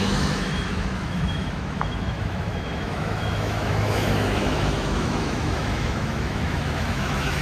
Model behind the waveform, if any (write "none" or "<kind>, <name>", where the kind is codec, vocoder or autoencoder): autoencoder, DAC-VAE